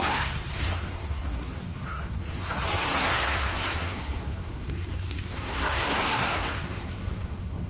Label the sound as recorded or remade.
remade